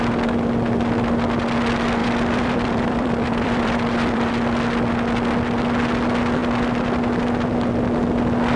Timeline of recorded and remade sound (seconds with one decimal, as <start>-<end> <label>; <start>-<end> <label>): 0.0-2.0 recorded; 2.0-4.3 remade; 4.3-8.6 recorded